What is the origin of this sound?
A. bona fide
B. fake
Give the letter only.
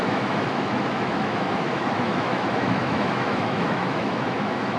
B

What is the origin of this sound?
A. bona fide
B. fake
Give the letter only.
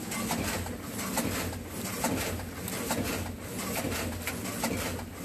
A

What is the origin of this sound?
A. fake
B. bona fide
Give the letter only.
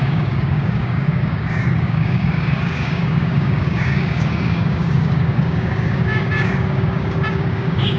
A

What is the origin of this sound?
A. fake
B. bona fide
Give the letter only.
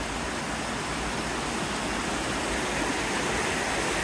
B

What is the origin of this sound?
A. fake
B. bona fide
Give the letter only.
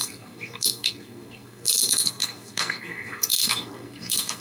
A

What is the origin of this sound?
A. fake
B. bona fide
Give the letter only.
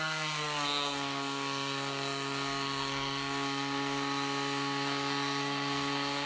A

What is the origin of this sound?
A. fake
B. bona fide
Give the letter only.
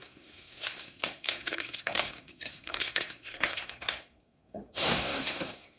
A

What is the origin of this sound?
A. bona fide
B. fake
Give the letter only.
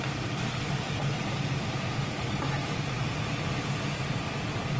B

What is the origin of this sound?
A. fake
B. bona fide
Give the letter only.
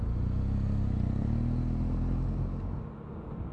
B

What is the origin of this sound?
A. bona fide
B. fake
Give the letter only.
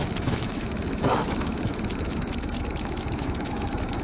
B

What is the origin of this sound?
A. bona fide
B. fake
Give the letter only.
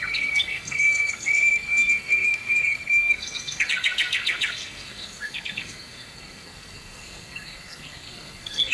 B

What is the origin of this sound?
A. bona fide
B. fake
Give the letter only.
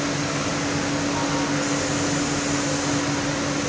A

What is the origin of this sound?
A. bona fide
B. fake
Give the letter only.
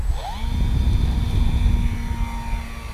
A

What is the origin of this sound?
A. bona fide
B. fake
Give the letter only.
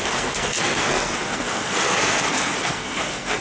B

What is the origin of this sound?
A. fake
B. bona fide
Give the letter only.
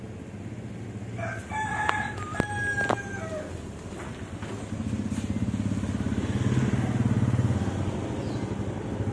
B